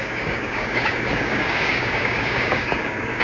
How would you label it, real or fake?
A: fake